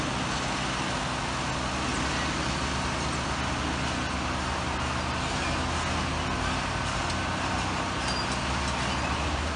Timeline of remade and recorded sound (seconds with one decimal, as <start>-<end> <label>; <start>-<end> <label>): 0.0-9.6 recorded